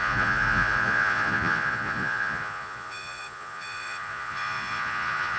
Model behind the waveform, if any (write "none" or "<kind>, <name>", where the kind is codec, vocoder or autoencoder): vocoder, Vocos